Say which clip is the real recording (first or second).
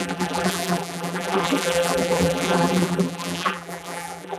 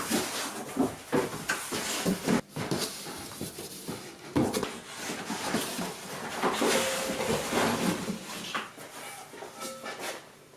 second